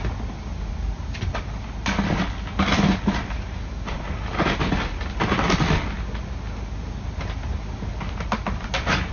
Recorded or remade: recorded